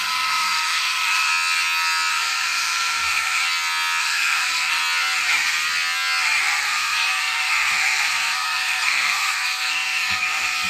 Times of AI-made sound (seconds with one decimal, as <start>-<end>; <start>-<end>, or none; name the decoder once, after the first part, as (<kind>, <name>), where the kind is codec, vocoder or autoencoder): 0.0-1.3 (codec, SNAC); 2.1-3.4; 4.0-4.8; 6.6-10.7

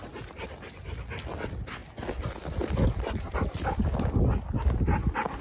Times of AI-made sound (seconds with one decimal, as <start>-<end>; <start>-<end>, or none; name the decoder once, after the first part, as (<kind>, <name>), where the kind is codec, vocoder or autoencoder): none

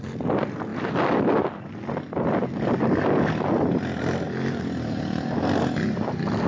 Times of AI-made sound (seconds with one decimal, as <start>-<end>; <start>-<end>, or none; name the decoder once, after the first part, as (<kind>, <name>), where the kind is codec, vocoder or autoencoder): none